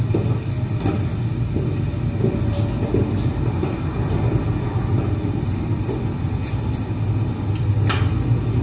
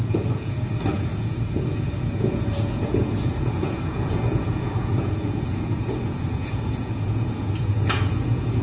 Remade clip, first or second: second